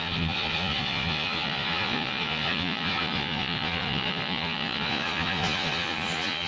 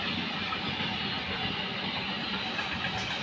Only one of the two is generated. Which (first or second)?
first